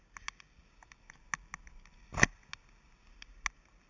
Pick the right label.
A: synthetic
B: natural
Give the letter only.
B